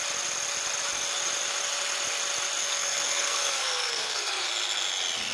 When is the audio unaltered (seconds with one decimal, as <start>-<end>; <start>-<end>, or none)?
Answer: 0.0-2.6; 4.5-5.3